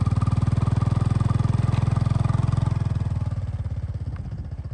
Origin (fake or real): real